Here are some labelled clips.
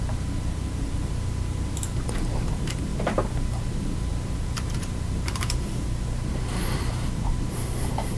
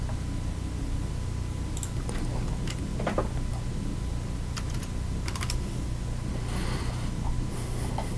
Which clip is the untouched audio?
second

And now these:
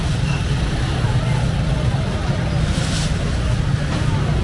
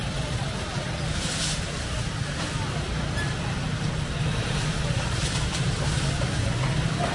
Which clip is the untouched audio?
first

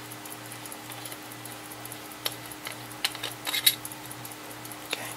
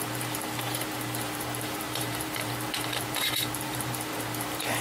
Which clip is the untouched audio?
first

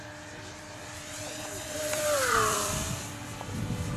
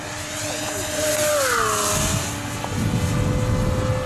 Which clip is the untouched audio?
second